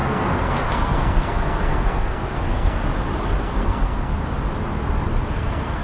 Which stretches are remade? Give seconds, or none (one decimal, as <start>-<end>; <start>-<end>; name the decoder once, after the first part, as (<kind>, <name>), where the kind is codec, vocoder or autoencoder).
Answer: 0.0-2.8 (codec, SNAC); 3.4-4.1; 5.3-5.8